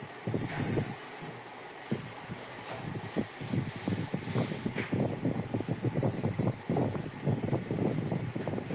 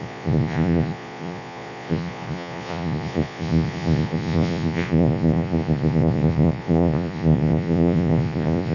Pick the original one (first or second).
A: first